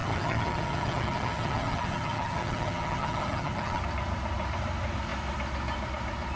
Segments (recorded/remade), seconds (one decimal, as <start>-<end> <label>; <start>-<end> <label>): 0.0-3.8 remade; 3.8-6.4 recorded